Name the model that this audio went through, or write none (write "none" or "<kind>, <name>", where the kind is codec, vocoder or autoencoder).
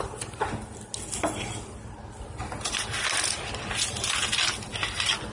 none